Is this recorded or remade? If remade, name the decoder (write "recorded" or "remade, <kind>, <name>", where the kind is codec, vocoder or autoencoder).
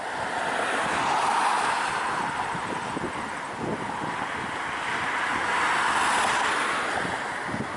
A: recorded